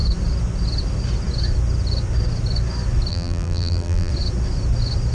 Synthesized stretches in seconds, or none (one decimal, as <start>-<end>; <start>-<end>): 3.1-4.1